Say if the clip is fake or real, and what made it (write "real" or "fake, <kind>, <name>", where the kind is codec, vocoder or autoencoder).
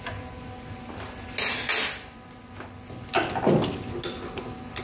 real